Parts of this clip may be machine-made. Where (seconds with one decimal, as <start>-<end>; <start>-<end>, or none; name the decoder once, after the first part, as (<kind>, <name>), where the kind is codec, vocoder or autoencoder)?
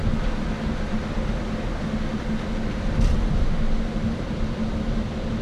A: none